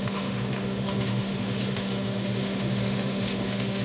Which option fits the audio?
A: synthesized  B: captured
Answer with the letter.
A